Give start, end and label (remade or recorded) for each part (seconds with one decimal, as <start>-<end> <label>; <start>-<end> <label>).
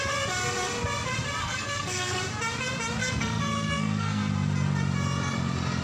0.0-1.4 recorded; 1.4-2.2 remade; 2.2-3.0 recorded; 3.0-4.3 remade; 4.3-5.8 recorded